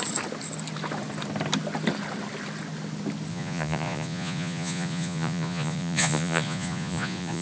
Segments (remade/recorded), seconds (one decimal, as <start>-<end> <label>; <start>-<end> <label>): 0.0-3.3 recorded; 3.3-7.4 remade